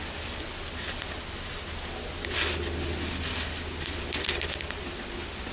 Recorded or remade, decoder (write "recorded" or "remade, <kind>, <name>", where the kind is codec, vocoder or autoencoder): recorded